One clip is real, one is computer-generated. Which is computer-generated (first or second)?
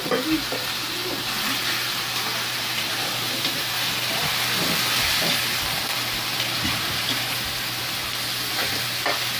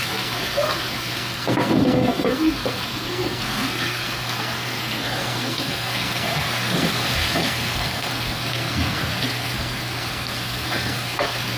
second